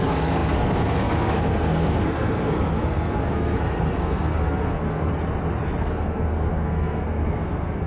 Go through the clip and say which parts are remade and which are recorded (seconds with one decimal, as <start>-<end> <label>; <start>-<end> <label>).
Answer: 0.0-5.1 remade; 5.1-5.8 recorded; 5.8-7.9 remade